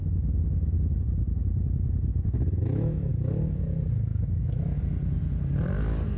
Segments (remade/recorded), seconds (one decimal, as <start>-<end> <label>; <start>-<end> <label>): 0.0-2.1 recorded; 2.1-3.1 remade; 3.1-4.1 recorded; 4.1-4.8 remade; 4.8-6.2 recorded